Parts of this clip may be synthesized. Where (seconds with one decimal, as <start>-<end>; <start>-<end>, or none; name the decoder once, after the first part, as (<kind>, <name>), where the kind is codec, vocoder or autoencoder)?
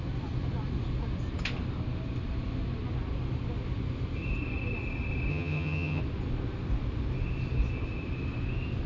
5.3-6.0 (vocoder, HiFi-GAN)